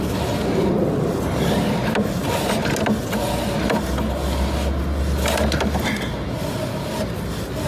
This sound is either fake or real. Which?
real